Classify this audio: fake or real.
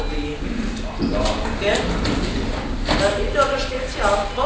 real